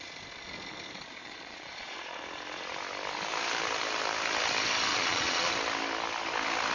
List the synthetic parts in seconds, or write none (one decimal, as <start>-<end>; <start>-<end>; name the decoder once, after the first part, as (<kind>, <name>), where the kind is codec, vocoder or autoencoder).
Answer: 1.2-2.2 (vocoder, Vocos); 4.9-5.5